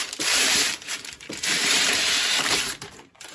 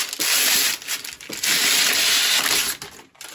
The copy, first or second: first